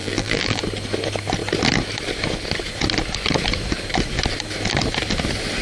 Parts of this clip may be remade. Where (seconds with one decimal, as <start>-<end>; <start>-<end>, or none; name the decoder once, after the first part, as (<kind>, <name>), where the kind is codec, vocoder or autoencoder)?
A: 0.0-0.6 (vocoder, BigVGAN v2)